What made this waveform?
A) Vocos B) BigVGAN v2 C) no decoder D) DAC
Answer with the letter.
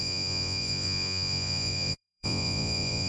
A